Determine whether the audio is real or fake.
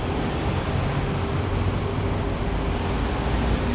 real